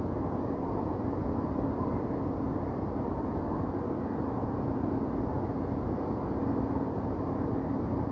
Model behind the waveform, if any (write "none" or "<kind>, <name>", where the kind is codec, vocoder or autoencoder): none